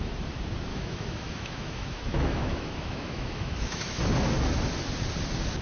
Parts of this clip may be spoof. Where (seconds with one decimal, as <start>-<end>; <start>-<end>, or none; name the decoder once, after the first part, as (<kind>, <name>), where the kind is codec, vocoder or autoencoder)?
0.7-4.0 (autoencoder, DAC-VAE)